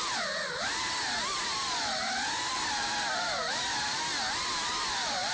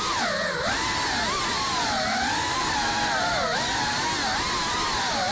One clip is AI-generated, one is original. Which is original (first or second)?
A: second